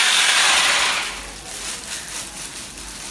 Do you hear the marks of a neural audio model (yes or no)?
no